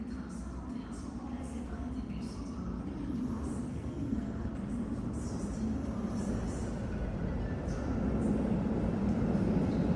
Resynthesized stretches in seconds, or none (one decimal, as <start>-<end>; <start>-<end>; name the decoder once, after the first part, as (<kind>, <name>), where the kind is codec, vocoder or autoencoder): 1.4-1.9 (codec, SNAC); 3.7-4.5